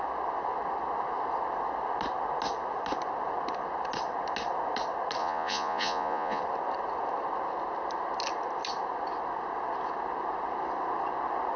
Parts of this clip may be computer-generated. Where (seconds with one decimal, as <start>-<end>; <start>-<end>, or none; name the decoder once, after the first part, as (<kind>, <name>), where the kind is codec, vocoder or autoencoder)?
5.2-6.4 (vocoder, Vocos)